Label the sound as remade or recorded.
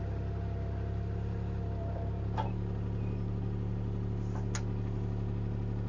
recorded